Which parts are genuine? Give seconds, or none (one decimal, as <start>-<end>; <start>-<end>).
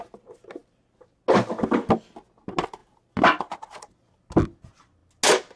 0.0-5.6